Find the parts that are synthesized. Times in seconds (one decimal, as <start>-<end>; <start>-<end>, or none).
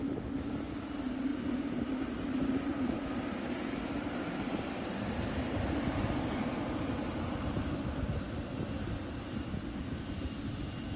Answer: 1.3-2.6; 4.5-7.6